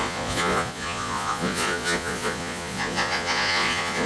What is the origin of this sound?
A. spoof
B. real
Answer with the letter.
A